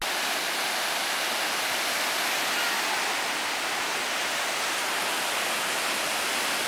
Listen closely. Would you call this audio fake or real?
real